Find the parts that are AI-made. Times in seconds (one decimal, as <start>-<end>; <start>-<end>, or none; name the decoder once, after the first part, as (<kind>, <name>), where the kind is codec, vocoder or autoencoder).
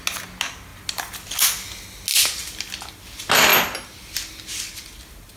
none